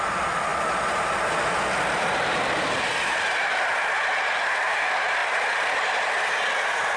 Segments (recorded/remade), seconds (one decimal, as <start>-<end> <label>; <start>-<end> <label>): 0.0-7.0 recorded